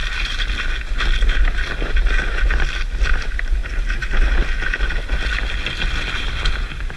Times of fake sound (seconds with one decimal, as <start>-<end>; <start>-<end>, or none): 0.0-0.5